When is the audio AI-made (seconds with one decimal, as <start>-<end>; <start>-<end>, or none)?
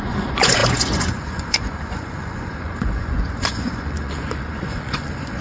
0.0-5.4